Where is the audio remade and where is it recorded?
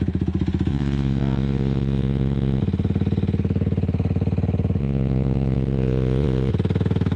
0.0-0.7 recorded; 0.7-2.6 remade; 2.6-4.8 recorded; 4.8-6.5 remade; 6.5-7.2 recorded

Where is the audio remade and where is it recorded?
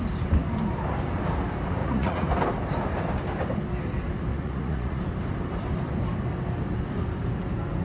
0.0-1.8 recorded; 1.8-2.3 remade; 2.3-4.3 recorded; 4.3-5.0 remade; 5.0-7.8 recorded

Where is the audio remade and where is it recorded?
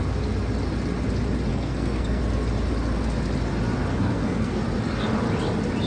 0.0-1.5 recorded; 1.5-2.2 remade; 2.2-3.9 recorded; 3.9-4.6 remade; 4.6-5.9 recorded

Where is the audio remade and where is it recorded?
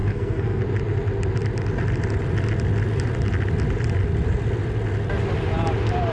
0.0-0.6 remade; 0.6-6.1 recorded